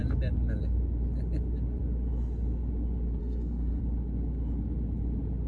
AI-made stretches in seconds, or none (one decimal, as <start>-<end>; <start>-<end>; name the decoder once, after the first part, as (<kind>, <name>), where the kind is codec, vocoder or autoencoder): 3.2-3.8 (codec, SNAC)